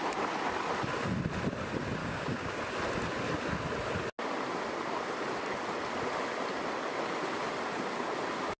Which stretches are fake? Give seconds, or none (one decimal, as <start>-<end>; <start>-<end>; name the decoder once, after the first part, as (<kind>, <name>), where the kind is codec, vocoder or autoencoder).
2.0-2.6 (codec, DAC)